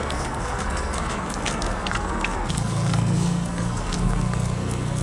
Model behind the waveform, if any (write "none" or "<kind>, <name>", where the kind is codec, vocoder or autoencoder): codec, SNAC